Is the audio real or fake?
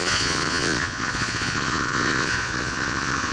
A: fake